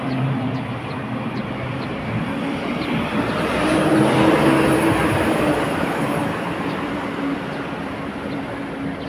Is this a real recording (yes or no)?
no